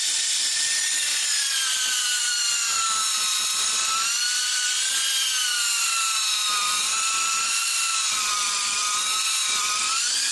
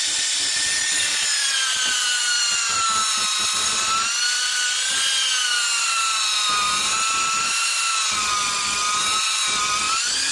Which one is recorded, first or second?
second